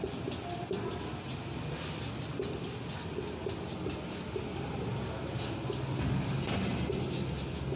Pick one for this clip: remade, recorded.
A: recorded